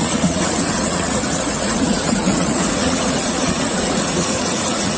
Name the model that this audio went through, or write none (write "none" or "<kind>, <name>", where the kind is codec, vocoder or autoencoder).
vocoder, Vocos